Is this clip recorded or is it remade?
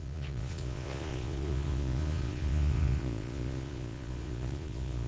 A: remade